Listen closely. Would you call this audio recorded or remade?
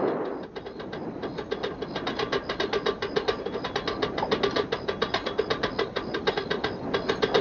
recorded